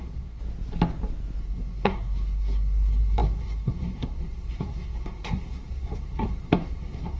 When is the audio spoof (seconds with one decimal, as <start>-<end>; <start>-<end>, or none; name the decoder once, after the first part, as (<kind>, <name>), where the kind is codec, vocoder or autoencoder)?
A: 0.0-0.4 (codec, SNAC); 1.4-7.2